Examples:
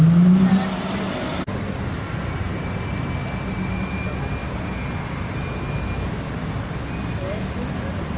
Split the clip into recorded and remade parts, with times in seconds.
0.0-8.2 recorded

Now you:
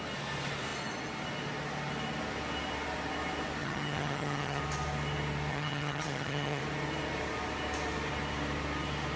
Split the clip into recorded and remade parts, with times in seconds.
0.0-3.6 recorded; 3.6-4.6 remade; 4.6-5.5 recorded; 5.5-6.6 remade; 6.6-9.2 recorded

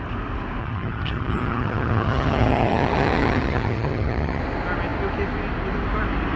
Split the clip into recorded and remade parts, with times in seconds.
0.0-0.6 recorded; 0.6-4.4 remade; 4.4-6.4 recorded

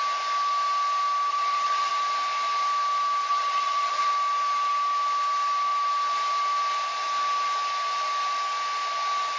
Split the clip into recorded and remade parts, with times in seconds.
0.0-1.3 recorded; 1.3-1.9 remade; 1.9-3.2 recorded; 3.2-4.1 remade; 4.1-9.4 recorded

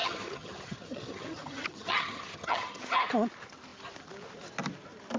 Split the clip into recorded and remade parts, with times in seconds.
0.0-2.8 remade; 2.8-5.2 recorded

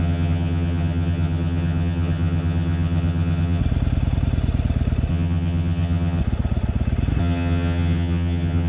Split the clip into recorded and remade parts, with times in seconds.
0.0-3.6 remade; 3.6-5.1 recorded; 5.1-6.2 remade; 6.2-7.2 recorded; 7.2-8.7 remade